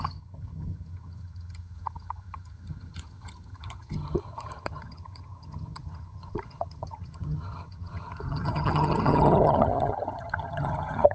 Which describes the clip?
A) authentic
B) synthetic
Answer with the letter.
B